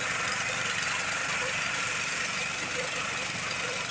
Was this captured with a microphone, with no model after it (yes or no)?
yes